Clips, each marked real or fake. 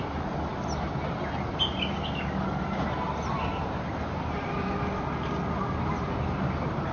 real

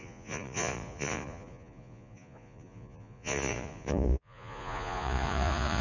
fake